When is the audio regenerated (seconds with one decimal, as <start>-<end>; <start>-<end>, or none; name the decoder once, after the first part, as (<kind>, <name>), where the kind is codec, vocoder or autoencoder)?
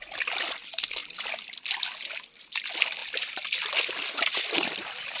none